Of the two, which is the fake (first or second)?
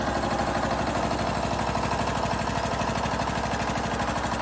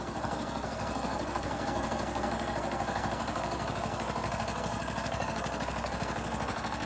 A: second